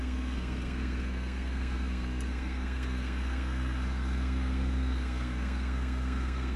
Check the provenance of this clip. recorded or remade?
remade